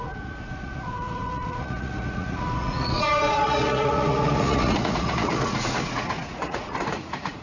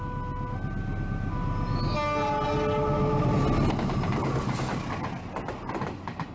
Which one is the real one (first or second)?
second